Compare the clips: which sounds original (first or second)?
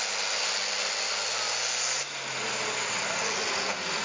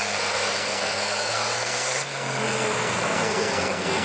first